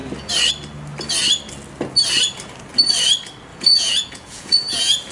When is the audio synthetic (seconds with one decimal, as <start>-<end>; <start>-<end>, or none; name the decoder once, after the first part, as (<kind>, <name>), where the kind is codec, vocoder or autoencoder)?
3.5-5.1 (vocoder, Vocos)

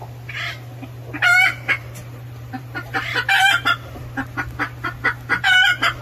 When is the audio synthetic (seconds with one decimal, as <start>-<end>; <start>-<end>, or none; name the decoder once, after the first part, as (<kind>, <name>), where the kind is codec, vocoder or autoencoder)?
1.8-4.0 (vocoder, BigVGAN v2)

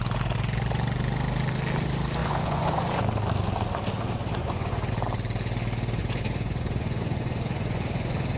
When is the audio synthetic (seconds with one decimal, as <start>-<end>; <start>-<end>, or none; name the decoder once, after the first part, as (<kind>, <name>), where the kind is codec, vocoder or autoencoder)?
2.2-3.0 (vocoder, Vocos); 4.4-4.9; 6.0-8.4